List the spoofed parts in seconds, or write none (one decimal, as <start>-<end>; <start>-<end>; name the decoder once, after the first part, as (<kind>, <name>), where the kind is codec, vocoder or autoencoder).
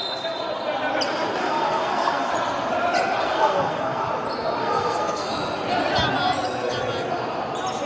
1.4-2.3 (codec, SNAC); 3.2-4.0; 4.6-5.3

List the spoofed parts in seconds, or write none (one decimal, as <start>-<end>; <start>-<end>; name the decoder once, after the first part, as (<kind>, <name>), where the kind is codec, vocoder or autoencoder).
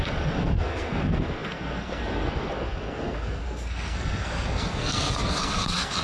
0.0-6.0 (codec, SNAC)